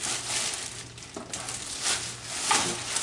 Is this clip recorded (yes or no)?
yes